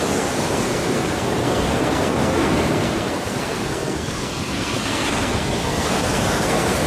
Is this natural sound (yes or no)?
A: no